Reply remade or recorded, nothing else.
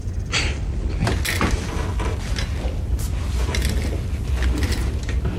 recorded